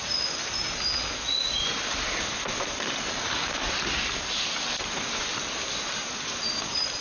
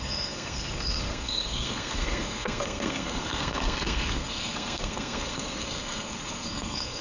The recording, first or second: first